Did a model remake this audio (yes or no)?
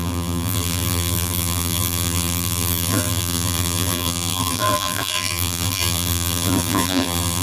yes